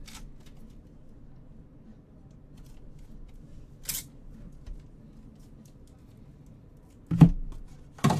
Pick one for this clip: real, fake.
real